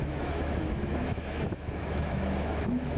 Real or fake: fake